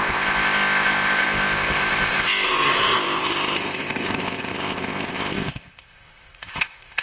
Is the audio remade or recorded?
remade